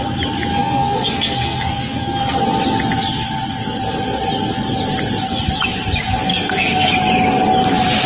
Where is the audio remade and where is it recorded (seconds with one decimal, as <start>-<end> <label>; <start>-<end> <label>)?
0.0-0.5 recorded; 0.5-2.4 remade; 2.4-6.3 recorded; 6.3-6.9 remade; 6.9-8.1 recorded